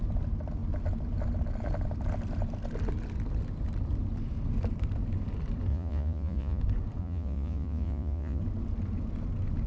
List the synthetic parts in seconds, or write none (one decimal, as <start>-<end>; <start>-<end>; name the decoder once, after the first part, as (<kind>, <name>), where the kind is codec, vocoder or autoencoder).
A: 5.7-6.6 (vocoder, Vocos); 7.0-8.4